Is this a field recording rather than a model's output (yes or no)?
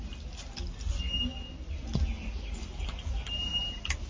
yes